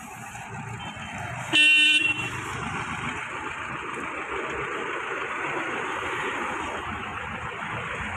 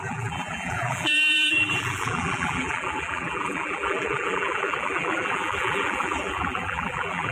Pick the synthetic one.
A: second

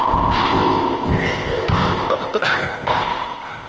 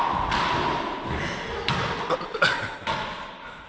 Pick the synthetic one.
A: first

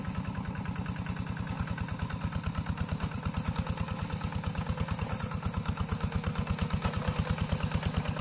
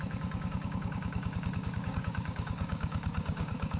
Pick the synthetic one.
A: second